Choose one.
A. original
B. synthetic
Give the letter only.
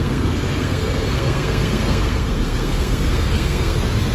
B